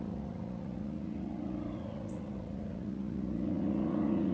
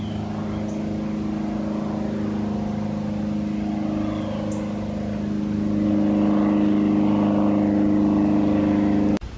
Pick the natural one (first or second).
second